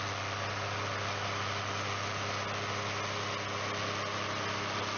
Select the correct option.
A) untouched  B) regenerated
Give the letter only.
A